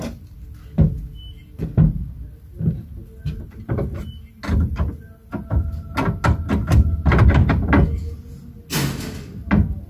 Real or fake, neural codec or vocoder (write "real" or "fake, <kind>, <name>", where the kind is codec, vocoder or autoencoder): real